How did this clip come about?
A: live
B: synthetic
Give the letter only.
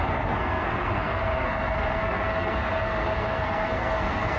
B